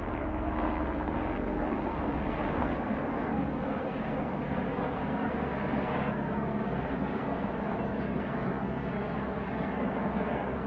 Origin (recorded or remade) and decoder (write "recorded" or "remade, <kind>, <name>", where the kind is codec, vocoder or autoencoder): remade, codec, SNAC